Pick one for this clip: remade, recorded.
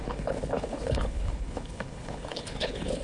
remade